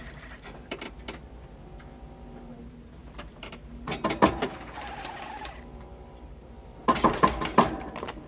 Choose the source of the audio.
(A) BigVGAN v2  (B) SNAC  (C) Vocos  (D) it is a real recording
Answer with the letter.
A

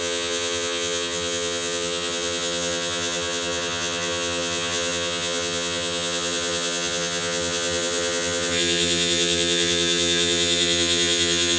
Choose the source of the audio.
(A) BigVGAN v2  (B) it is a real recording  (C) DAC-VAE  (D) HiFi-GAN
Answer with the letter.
D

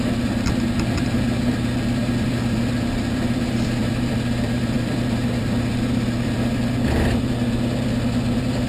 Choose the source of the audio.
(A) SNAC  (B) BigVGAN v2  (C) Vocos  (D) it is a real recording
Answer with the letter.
B